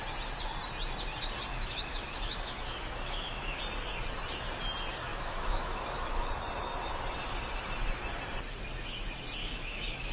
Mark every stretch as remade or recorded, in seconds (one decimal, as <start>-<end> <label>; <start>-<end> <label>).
0.0-1.5 recorded; 1.5-3.6 remade; 3.6-5.1 recorded; 5.1-6.3 remade; 6.3-9.4 recorded; 9.4-10.1 remade